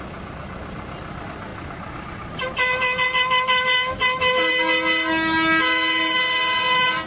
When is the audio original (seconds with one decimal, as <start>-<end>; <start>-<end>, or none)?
0.0-7.1

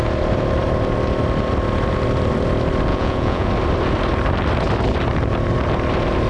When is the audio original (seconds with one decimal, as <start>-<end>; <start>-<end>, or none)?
0.0-2.9; 3.5-6.3

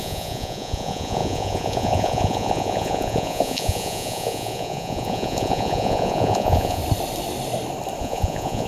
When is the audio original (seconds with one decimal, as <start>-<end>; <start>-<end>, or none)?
6.8-8.0

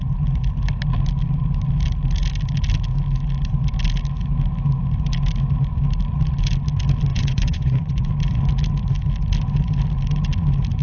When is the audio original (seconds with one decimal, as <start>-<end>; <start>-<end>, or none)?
0.0-7.1; 8.1-10.8

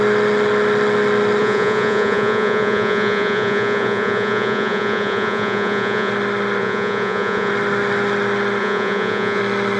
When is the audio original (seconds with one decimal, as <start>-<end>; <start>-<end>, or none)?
0.0-1.4; 6.1-6.6; 7.5-8.6; 9.4-9.8